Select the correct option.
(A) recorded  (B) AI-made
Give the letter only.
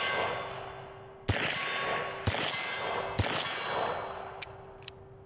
A